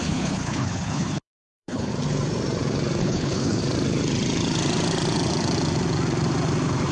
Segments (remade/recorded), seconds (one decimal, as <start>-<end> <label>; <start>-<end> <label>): 0.0-1.9 remade; 1.9-3.0 recorded; 3.0-3.6 remade; 3.6-6.9 recorded